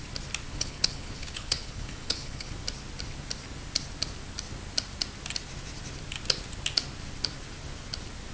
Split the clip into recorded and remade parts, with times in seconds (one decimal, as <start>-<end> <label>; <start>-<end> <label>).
0.0-0.5 recorded; 0.5-2.5 remade; 2.5-8.3 recorded